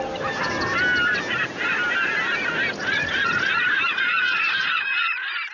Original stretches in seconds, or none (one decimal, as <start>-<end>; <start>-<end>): 0.0-2.8